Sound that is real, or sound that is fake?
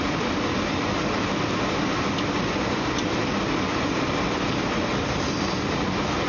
real